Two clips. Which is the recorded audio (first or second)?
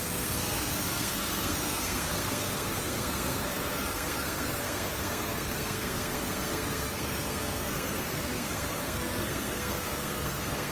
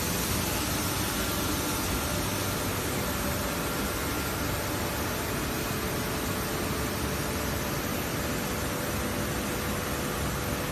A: second